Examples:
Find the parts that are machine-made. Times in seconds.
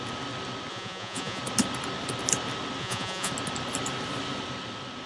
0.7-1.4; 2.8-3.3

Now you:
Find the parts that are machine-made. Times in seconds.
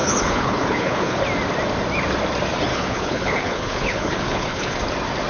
0.0-1.2; 2.7-4.8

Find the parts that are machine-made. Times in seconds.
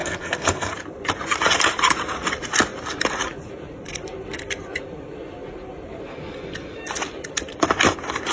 0.0-0.7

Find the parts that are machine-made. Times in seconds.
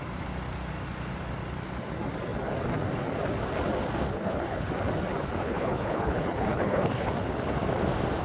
4.1-4.7; 5.4-7.1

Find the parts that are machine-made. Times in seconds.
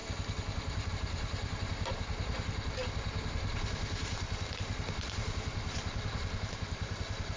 0.9-7.4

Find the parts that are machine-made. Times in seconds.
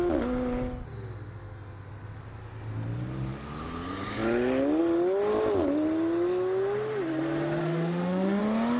7.6-8.4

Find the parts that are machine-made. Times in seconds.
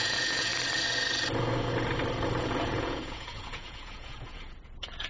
0.0-0.5; 2.4-5.1